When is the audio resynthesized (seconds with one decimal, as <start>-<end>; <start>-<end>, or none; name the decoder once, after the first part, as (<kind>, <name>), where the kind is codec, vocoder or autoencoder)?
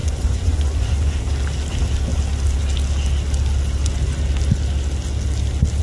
0.0-1.1 (vocoder, Vocos)